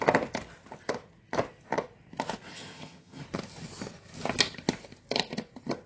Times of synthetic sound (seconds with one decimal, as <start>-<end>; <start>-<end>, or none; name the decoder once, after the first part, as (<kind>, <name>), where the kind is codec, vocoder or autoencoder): 2.5-3.2 (vocoder, HiFi-GAN)